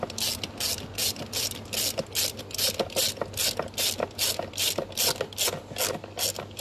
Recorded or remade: recorded